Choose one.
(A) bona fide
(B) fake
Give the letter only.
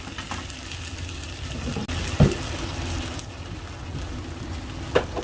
A